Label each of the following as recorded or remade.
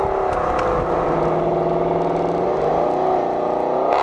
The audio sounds recorded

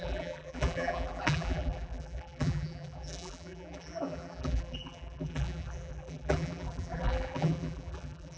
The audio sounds remade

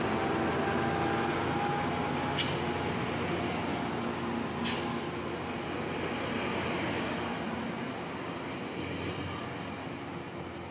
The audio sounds recorded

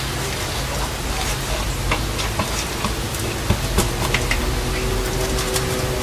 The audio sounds recorded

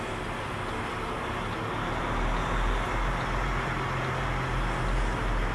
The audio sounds recorded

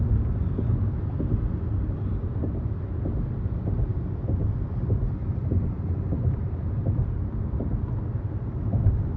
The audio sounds recorded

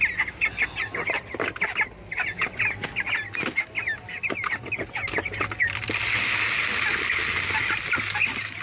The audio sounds recorded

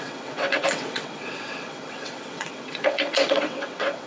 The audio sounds remade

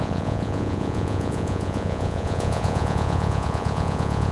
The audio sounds remade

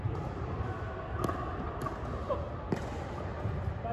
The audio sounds recorded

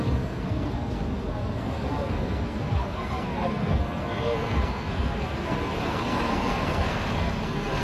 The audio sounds remade